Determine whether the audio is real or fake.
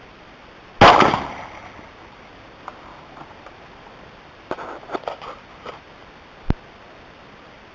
real